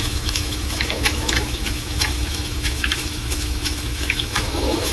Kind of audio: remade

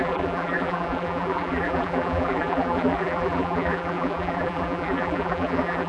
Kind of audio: remade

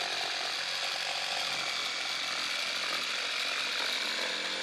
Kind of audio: recorded